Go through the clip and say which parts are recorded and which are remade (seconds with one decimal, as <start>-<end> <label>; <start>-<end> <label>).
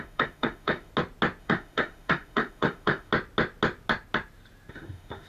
0.0-0.9 remade; 0.9-1.4 recorded; 1.4-3.1 remade; 3.1-4.7 recorded; 4.7-5.3 remade